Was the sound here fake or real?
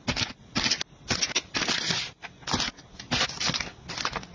real